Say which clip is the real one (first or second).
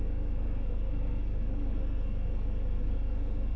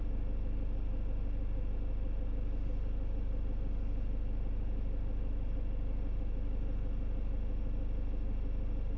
second